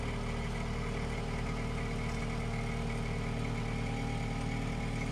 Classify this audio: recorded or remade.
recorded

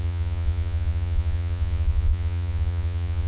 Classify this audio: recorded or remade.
remade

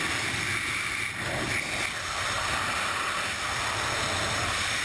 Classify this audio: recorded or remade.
recorded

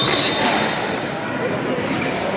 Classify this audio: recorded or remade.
recorded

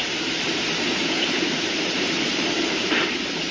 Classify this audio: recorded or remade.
remade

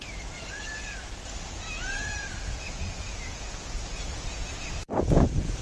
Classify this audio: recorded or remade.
remade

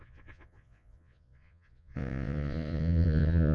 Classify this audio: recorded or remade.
remade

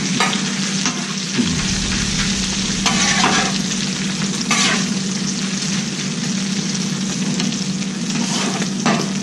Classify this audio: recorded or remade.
recorded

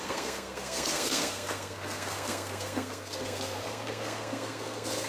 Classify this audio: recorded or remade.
remade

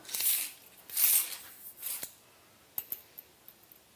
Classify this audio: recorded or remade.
recorded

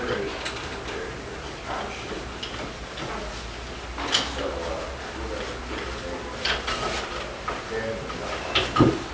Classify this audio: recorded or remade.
recorded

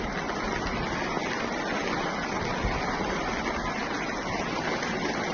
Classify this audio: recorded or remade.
recorded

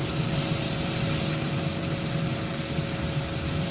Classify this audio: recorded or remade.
recorded